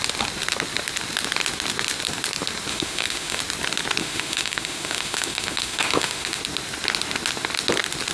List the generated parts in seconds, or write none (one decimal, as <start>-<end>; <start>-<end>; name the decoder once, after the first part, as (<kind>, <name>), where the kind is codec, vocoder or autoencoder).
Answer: 2.7-3.4 (autoencoder, DAC-VAE); 4.0-6.4